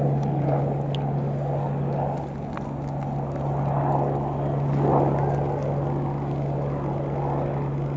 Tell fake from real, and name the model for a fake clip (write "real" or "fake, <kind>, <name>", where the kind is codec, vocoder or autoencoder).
real